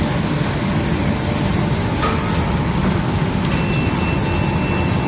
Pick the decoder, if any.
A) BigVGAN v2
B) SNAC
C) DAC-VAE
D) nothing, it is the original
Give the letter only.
D